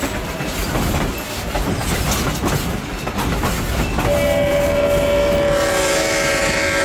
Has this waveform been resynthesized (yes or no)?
no